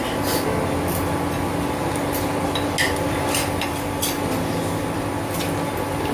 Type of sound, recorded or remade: recorded